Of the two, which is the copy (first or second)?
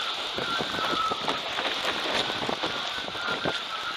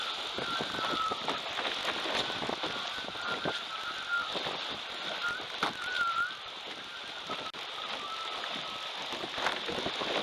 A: first